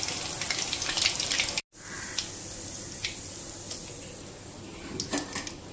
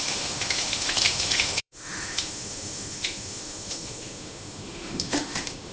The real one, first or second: first